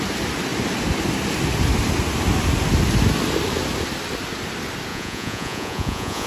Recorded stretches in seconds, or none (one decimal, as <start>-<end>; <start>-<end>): 0.0-4.9